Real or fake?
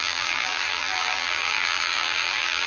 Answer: fake